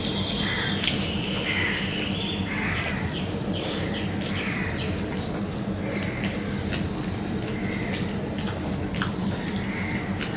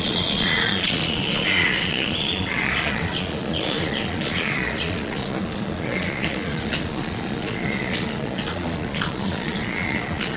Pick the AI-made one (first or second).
second